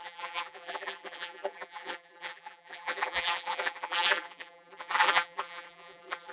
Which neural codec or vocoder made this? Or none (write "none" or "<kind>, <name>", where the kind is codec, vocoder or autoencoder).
vocoder, BigVGAN v2